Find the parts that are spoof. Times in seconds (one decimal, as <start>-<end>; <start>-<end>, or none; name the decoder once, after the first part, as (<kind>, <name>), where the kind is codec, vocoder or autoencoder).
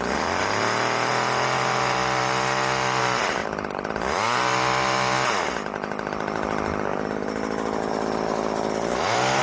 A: 3.4-3.9 (vocoder, BigVGAN v2)